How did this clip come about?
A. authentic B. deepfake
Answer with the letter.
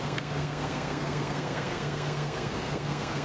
B